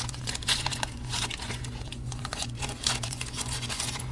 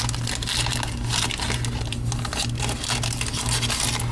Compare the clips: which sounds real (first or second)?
second